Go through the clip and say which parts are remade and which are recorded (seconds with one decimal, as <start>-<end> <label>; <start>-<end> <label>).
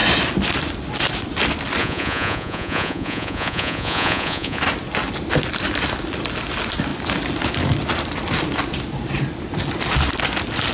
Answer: 0.0-1.8 recorded; 1.8-4.6 remade; 4.6-10.7 recorded